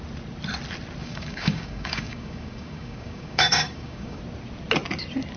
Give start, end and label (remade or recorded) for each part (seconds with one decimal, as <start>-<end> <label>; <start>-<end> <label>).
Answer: 0.0-1.0 recorded; 1.0-4.2 remade; 4.2-5.4 recorded